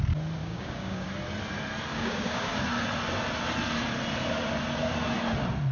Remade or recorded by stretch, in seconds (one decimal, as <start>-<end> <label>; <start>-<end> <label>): 0.0-0.4 recorded; 0.4-1.1 remade; 1.1-1.9 recorded; 1.9-2.6 remade; 2.6-5.7 recorded